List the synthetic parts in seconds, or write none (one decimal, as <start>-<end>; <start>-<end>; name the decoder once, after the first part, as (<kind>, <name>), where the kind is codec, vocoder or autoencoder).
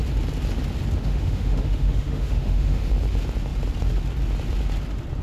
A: 1.0-2.9 (autoencoder, DAC-VAE)